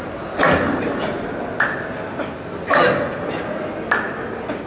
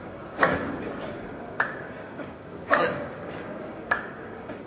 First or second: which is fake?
second